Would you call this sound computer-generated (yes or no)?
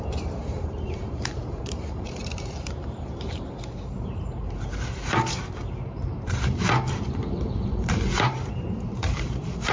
yes